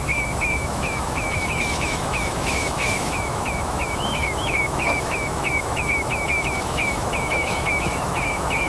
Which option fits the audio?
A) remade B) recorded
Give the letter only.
A